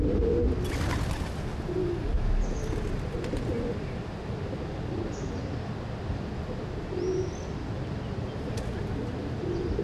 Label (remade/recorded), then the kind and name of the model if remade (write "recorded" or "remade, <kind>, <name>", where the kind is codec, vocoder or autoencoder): recorded